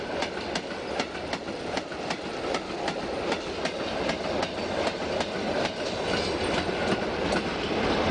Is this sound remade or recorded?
recorded